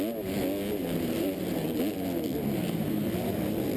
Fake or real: real